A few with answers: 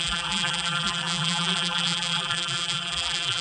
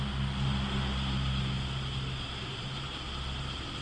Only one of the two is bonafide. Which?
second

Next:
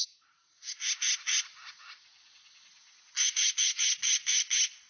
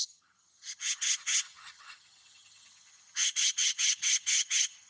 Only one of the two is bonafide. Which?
first